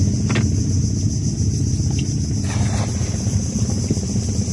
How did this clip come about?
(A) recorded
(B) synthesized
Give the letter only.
A